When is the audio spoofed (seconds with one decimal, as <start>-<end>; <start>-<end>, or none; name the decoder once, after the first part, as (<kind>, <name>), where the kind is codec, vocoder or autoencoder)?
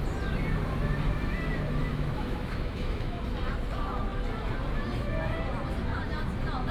1.9-3.2 (autoencoder, DAC-VAE)